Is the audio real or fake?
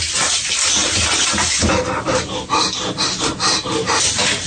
real